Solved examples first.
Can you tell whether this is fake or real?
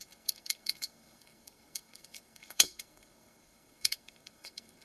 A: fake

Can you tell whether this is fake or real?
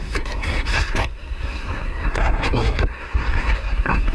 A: fake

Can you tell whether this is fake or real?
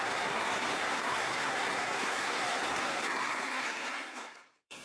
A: fake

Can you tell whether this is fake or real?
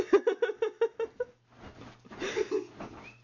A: real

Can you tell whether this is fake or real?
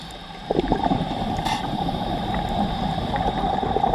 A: fake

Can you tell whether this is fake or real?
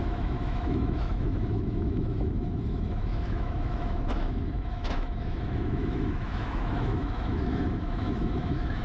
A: fake